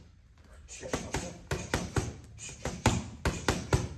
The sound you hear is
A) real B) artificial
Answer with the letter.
A